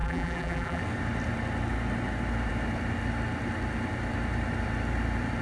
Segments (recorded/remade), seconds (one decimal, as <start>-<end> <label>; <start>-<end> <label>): 0.0-0.8 remade; 0.8-5.4 recorded